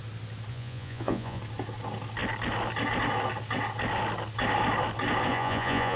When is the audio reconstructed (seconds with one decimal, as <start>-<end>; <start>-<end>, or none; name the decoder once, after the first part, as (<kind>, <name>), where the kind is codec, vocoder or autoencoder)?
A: 0.5-1.4 (vocoder, Vocos); 5.3-6.0